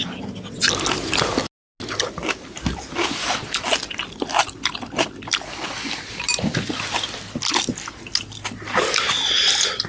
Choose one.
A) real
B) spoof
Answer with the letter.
A